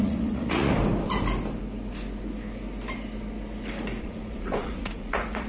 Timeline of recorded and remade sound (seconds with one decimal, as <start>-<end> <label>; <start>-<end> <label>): 0.0-0.7 remade; 0.7-4.0 recorded; 4.0-5.5 remade